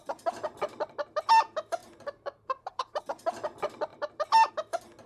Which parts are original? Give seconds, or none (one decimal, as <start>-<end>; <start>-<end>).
0.5-1.8; 3.0-3.9; 4.5-5.1